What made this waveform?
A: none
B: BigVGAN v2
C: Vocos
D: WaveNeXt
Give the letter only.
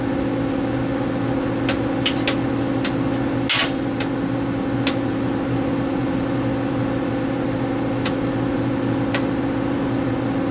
A